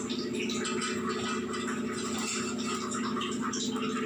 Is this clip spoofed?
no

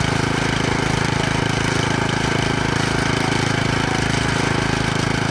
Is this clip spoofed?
no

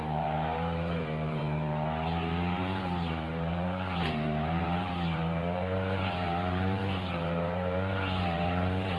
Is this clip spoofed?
yes